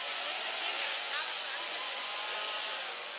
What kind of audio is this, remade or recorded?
remade